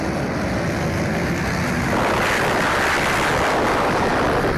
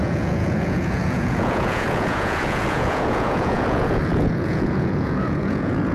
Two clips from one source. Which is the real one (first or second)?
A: first